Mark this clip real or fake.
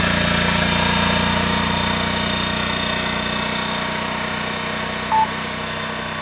real